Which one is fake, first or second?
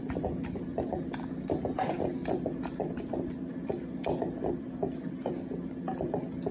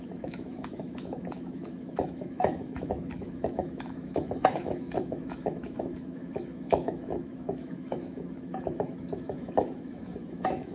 second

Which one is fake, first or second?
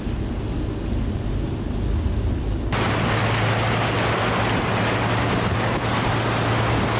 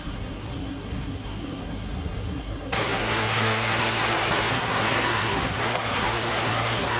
second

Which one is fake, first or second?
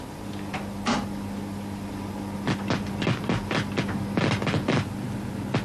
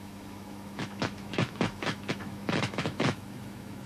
second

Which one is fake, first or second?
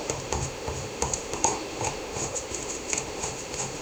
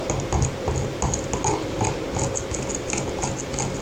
first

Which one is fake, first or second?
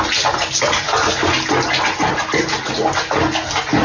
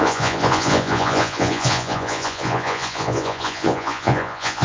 second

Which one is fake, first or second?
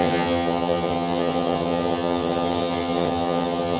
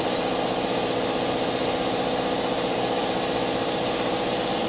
first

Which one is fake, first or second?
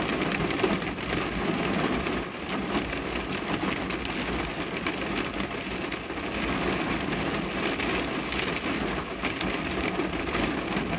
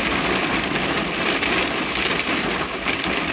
second